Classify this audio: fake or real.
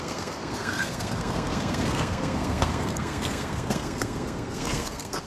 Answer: fake